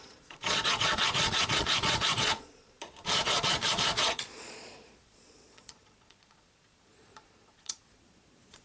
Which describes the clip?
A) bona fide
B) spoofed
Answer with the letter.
B